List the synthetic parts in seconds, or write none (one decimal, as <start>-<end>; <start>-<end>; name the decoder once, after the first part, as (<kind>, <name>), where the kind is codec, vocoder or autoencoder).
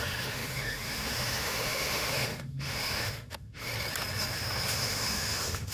0.0-3.7 (autoencoder, DAC-VAE); 4.3-5.7